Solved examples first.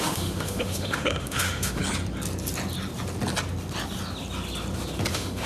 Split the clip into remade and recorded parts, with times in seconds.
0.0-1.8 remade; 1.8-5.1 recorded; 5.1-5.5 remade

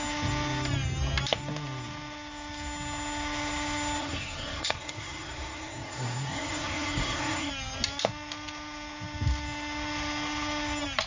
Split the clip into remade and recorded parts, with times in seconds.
0.0-4.0 recorded; 4.0-7.5 remade; 7.5-11.1 recorded

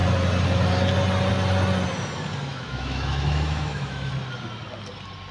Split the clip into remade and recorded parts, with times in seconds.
0.0-2.5 recorded; 2.5-4.1 remade; 4.1-5.3 recorded

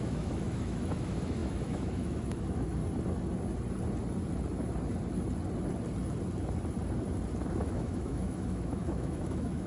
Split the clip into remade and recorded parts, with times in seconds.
0.0-2.8 remade; 2.8-7.6 recorded; 7.6-9.7 remade